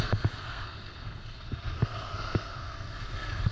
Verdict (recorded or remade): remade